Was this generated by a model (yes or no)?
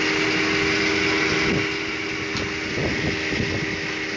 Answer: no